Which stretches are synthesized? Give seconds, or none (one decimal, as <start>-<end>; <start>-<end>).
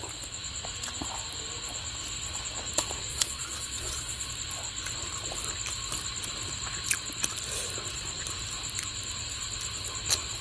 3.1-4.3